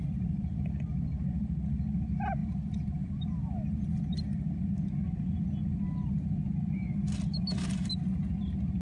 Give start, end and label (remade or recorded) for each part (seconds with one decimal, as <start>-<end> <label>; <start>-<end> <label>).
0.0-2.4 recorded; 2.4-3.2 remade; 3.2-8.8 recorded